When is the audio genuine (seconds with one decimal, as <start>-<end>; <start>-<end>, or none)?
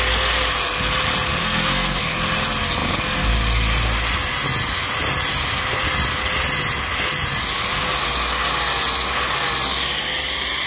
0.0-1.4; 2.0-10.7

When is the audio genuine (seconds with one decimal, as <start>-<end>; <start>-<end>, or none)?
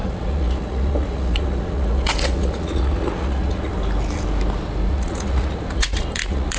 3.7-4.9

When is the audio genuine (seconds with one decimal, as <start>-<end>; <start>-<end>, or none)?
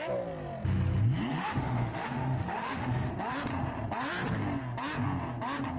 0.0-1.3; 3.1-5.8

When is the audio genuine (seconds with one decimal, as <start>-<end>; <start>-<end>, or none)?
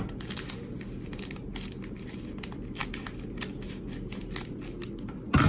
0.0-5.5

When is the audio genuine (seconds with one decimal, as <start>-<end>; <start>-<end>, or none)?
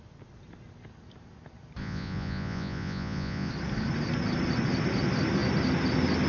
0.0-1.8; 3.5-6.3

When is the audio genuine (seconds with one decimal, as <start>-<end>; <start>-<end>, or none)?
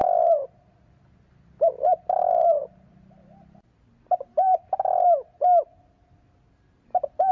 0.0-7.3